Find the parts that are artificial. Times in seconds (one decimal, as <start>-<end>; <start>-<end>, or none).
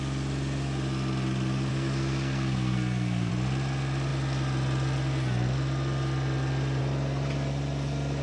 1.7-3.3